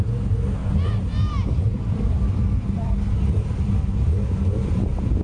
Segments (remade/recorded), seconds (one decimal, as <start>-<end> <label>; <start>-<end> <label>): 0.0-0.6 recorded; 0.6-3.7 remade; 3.7-5.2 recorded